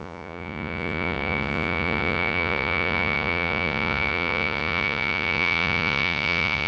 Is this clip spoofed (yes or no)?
yes